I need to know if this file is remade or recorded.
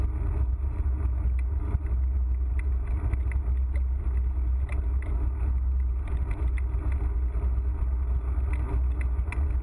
recorded